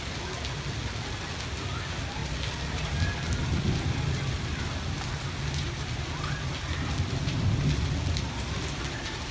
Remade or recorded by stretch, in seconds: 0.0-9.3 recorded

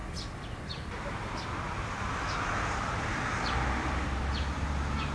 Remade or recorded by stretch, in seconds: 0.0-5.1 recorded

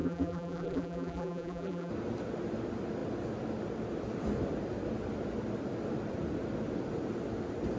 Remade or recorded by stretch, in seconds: 0.0-1.9 remade; 1.9-7.8 recorded

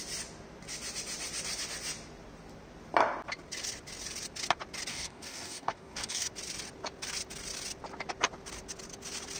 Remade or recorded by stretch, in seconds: 0.0-4.9 recorded; 4.9-6.3 remade; 6.3-9.4 recorded